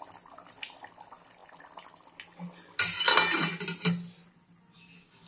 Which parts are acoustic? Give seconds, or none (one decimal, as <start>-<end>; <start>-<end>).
0.0-5.3